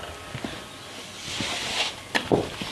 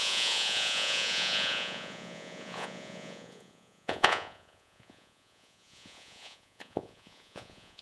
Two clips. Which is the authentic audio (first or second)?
first